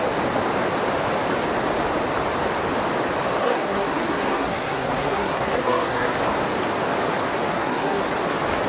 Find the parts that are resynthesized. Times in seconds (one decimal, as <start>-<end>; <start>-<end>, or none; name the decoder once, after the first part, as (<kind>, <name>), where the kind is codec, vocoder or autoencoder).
3.4-6.2 (codec, SNAC); 7.5-8.0